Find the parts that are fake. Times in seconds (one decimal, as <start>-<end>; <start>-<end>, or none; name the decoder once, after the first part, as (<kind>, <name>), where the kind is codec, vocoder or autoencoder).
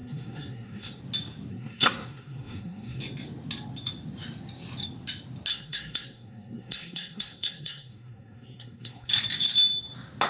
0.0-1.0 (codec, SNAC); 1.5-3.0; 5.5-9.1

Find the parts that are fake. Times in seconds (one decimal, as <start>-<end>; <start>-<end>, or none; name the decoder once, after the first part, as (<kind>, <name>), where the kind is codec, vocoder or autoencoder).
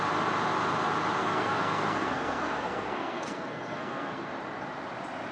1.2-4.3 (codec, SNAC)